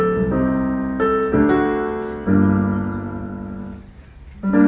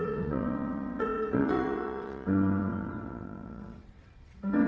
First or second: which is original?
first